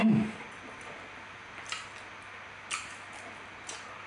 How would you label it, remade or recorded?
recorded